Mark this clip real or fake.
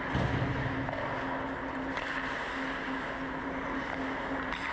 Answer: real